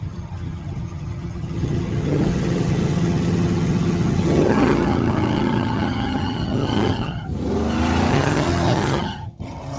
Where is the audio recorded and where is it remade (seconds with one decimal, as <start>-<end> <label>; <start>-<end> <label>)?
0.0-7.3 remade; 7.3-8.1 recorded; 8.1-9.8 remade